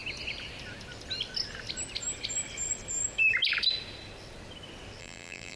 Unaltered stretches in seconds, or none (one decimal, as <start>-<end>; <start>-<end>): 0.0-5.0

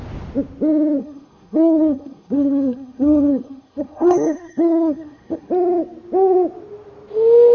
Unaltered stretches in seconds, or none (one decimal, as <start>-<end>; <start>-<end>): 0.0-1.0; 5.5-7.5

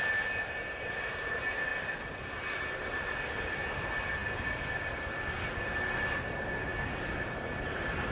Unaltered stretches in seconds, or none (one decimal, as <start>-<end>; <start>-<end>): 0.0-8.1

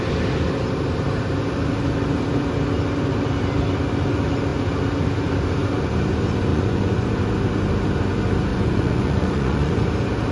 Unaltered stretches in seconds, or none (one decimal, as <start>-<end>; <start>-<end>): 0.0-6.5; 7.1-8.5; 9.8-10.3

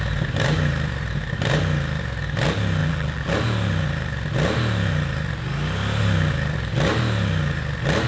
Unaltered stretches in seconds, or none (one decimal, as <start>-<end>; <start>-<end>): 0.0-2.8; 3.3-8.1

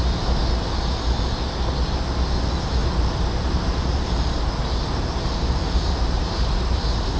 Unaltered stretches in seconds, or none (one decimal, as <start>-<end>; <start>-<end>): 0.0-2.8

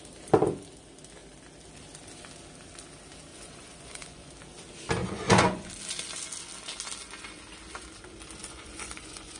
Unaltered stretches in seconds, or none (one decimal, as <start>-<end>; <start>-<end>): 0.0-3.3; 4.3-5.0; 5.7-8.4